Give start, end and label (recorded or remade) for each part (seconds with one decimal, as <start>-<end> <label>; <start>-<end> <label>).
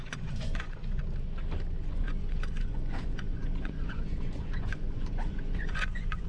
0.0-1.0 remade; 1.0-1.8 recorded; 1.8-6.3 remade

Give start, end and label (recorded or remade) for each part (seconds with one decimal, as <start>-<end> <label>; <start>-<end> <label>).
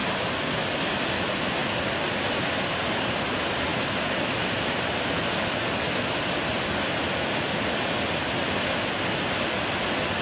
0.0-1.1 remade; 1.1-1.6 recorded; 1.6-3.1 remade; 3.1-10.2 recorded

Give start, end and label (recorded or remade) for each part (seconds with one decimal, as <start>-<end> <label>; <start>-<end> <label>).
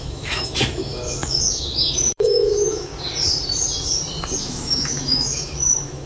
0.0-2.9 remade; 2.9-4.4 recorded; 4.4-6.1 remade